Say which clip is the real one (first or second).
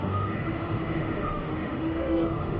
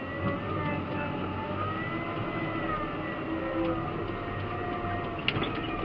second